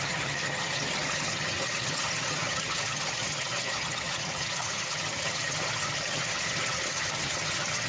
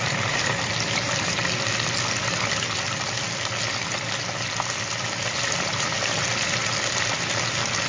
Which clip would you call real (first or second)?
second